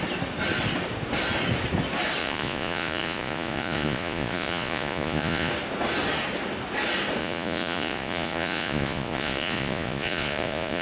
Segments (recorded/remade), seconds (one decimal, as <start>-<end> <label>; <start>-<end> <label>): 0.0-2.2 recorded; 2.2-5.5 remade; 5.5-7.2 recorded; 7.2-10.8 remade